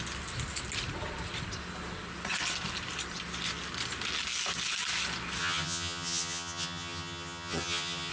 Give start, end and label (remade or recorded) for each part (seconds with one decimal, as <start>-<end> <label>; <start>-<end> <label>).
0.0-5.4 recorded; 5.4-8.1 remade